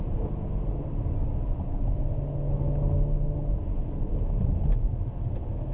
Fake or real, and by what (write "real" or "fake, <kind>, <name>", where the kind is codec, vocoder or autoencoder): real